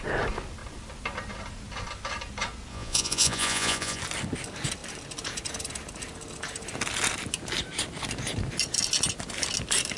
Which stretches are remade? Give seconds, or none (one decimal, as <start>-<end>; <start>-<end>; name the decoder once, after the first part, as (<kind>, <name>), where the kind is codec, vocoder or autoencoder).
2.7-4.0 (vocoder, Vocos)